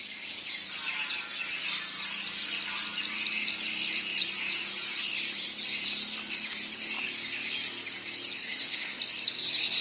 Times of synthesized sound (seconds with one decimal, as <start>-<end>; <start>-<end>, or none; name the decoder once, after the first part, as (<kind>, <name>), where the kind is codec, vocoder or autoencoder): 8.4-9.0 (codec, SNAC)